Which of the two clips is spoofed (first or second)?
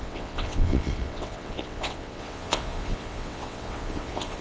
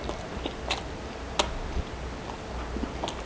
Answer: first